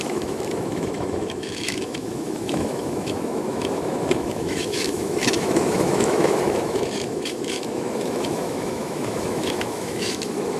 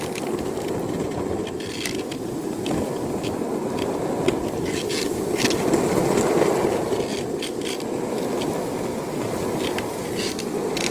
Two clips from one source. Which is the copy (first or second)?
first